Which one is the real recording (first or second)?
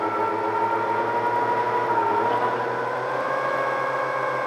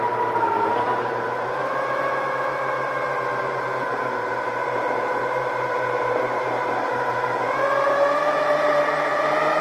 first